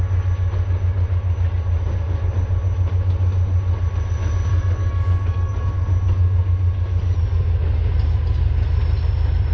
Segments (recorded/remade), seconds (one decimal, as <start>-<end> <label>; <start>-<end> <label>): 0.0-4.5 recorded; 4.5-5.7 remade; 5.7-7.3 recorded; 7.3-7.9 remade; 7.9-9.5 recorded